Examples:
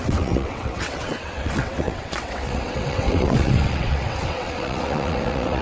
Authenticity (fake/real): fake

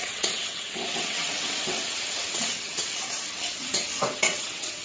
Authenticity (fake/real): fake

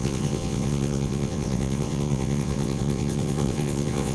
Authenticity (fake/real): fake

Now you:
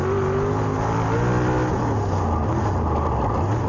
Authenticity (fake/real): real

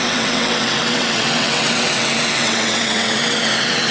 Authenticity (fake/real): fake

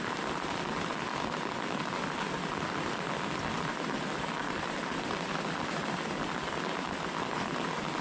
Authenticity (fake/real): real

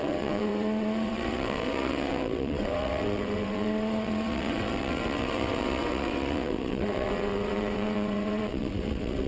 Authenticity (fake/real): fake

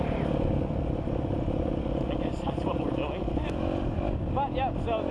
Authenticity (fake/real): real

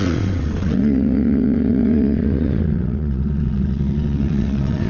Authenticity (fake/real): fake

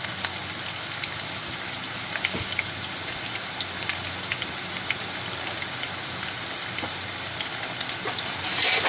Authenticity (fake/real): real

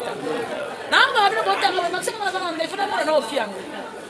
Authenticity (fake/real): fake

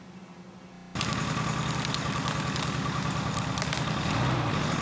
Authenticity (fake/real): real